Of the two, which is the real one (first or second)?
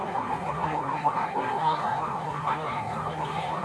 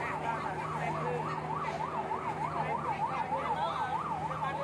second